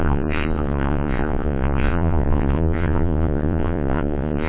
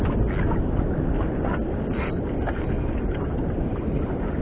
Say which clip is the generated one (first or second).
first